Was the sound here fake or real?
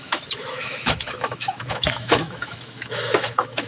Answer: fake